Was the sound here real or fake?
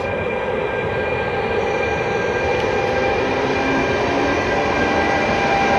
real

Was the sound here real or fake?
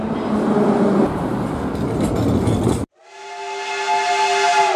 real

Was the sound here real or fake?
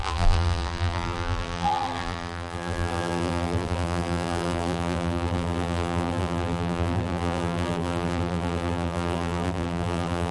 fake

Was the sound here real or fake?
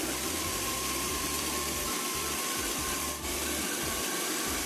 fake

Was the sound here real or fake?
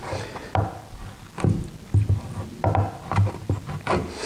real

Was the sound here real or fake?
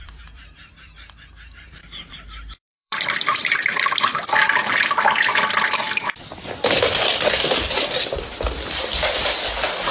fake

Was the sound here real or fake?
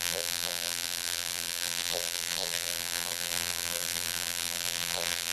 fake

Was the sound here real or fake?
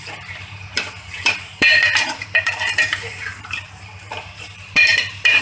fake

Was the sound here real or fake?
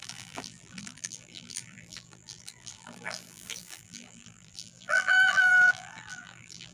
fake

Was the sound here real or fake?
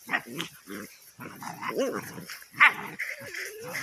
fake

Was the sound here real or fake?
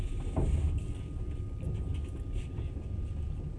real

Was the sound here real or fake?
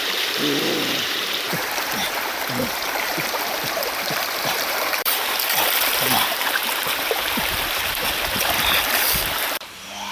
fake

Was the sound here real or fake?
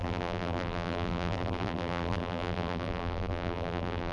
fake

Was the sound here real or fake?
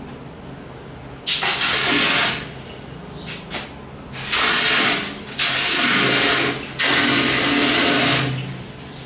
real